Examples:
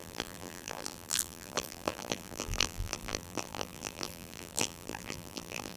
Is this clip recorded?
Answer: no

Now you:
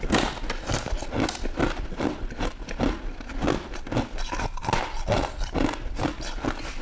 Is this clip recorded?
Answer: yes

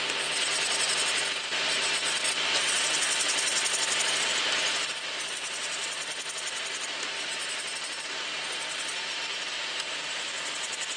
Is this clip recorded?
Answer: yes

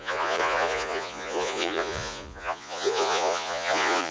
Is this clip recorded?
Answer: no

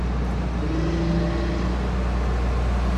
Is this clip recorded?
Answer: yes